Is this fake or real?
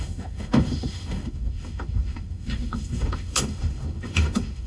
fake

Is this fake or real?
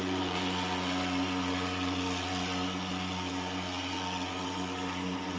real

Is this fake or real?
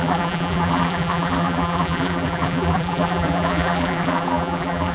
fake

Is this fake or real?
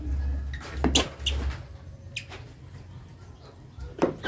real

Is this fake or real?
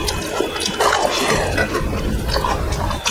real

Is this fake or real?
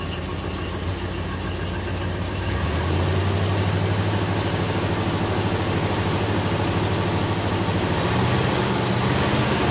real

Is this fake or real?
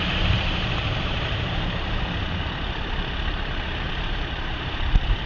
fake